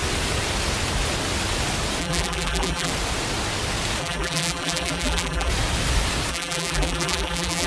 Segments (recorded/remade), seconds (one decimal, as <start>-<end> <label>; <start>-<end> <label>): 0.0-2.0 recorded; 2.0-2.9 remade; 2.9-4.0 recorded; 4.0-5.5 remade; 5.5-6.3 recorded; 6.3-7.7 remade